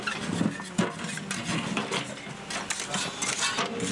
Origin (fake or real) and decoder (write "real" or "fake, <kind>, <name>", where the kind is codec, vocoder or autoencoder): real